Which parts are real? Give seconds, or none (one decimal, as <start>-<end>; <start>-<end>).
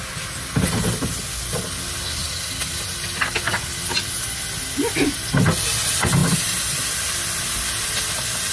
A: 0.0-2.2; 3.7-6.2